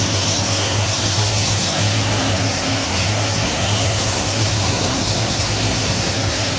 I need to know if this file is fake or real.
fake